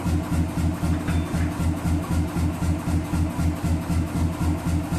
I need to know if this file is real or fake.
real